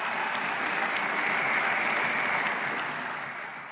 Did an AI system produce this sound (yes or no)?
no